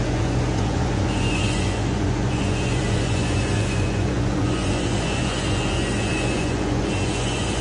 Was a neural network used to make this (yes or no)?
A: yes